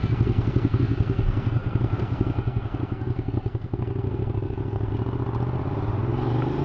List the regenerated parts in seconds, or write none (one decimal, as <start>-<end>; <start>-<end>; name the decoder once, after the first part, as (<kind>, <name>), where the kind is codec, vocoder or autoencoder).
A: 0.0-4.9 (codec, SNAC)